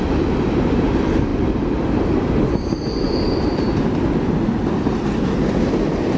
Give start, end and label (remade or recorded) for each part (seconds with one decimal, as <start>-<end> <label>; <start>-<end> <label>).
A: 0.0-6.2 recorded